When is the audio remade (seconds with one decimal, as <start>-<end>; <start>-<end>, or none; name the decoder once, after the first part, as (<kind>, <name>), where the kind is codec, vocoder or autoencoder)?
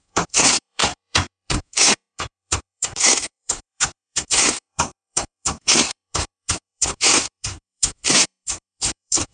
0.0-9.3 (codec, SNAC)